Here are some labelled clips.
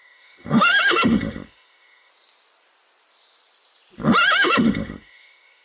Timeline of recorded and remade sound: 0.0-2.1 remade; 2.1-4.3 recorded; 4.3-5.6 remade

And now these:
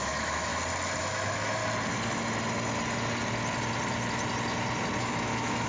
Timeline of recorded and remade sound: 0.0-0.5 remade; 0.5-1.0 recorded; 1.0-1.6 remade; 1.6-5.0 recorded; 5.0-5.7 remade

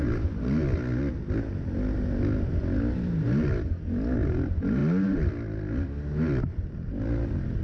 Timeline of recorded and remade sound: 0.0-7.6 recorded

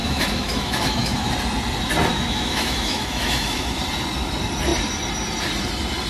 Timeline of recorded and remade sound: 0.0-1.3 remade; 1.3-2.1 recorded; 2.1-3.8 remade; 3.8-6.1 recorded

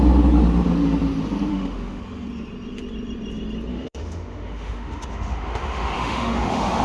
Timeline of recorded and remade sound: 0.0-1.5 recorded; 1.5-2.0 remade; 2.0-3.7 recorded; 3.7-6.8 remade